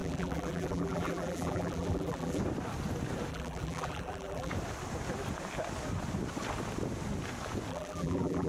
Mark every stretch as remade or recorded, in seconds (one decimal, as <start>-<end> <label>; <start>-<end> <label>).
0.0-2.4 remade; 2.4-3.3 recorded; 3.3-4.5 remade; 4.5-7.7 recorded; 7.7-8.5 remade

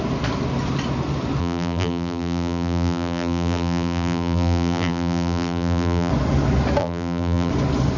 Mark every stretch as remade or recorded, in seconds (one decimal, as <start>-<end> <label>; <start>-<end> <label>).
0.0-1.4 recorded; 1.4-6.1 remade; 6.1-6.8 recorded; 6.8-7.5 remade; 7.5-8.0 recorded